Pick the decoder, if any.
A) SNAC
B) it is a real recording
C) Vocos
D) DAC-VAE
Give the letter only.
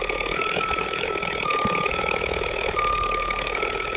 D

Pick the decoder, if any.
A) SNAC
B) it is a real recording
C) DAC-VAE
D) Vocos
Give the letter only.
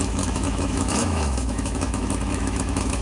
C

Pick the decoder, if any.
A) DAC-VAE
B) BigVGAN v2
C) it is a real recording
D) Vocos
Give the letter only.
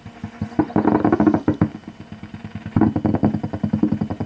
C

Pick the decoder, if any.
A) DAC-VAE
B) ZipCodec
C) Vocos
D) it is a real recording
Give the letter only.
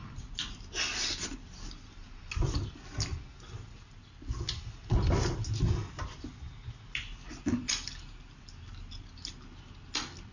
D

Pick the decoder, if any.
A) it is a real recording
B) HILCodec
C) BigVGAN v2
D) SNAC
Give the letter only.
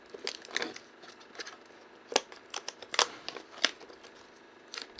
A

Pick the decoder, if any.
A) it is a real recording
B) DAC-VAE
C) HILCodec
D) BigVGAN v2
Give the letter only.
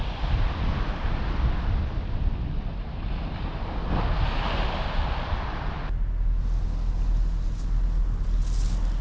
A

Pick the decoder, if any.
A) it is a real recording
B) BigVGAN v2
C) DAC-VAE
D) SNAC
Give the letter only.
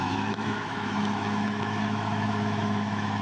C